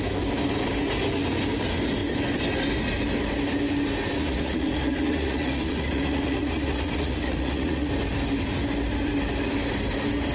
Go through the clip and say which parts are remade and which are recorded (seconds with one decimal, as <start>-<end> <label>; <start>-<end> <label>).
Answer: 0.0-4.2 recorded; 4.2-7.9 remade; 7.9-10.3 recorded